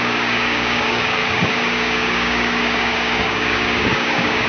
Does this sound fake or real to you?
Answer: fake